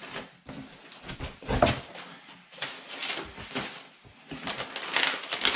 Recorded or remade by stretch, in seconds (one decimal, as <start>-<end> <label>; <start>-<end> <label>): 0.0-5.6 recorded